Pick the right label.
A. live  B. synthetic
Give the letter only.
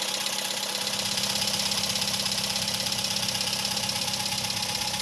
A